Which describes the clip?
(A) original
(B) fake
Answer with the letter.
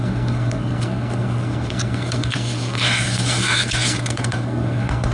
B